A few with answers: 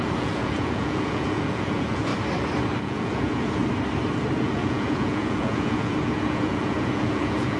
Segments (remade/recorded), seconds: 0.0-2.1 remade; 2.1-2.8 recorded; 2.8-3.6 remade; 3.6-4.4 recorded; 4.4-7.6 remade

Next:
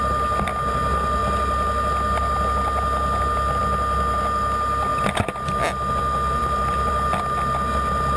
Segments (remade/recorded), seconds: 0.0-6.4 recorded; 6.4-6.9 remade; 6.9-8.2 recorded